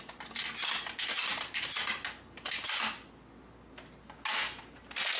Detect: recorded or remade recorded